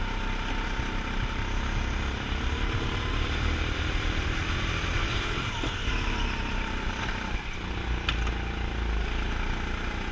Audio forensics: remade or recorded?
recorded